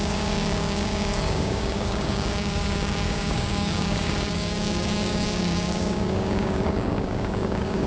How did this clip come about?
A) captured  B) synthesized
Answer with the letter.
B